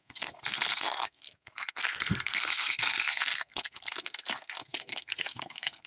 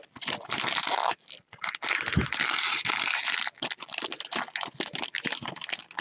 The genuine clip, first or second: second